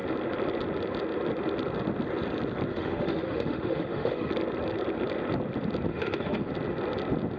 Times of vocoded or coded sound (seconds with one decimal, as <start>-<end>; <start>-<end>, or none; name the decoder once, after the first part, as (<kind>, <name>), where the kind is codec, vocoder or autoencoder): 2.7-4.3 (autoencoder, DAC-VAE); 5.9-6.5